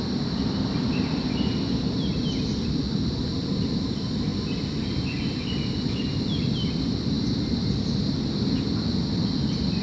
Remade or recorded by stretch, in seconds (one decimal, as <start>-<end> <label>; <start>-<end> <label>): 0.0-9.8 recorded